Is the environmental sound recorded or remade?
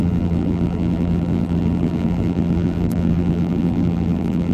remade